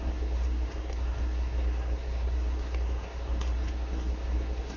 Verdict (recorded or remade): remade